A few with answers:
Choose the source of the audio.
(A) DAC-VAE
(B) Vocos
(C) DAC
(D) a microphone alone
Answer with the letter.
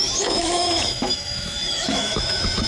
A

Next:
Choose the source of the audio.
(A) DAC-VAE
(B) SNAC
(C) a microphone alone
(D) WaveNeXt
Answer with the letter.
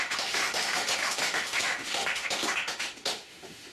A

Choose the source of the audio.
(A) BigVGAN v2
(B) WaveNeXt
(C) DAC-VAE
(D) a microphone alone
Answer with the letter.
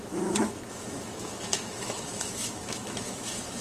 C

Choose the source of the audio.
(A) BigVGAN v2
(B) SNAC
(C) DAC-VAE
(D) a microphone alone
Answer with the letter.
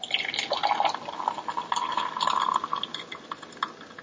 D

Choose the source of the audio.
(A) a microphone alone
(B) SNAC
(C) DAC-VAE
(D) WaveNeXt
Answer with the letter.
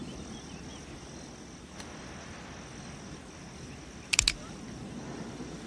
A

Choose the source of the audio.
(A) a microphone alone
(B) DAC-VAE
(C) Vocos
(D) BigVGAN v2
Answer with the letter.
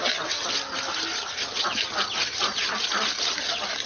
A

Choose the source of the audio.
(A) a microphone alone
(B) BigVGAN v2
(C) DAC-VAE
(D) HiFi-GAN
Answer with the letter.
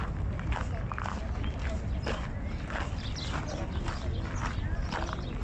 A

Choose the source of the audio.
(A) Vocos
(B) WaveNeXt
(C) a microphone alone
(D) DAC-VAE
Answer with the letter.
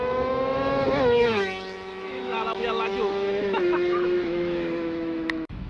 D